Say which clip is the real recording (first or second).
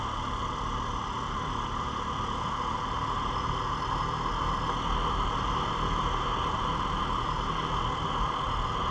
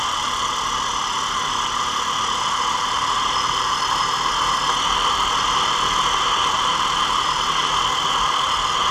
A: first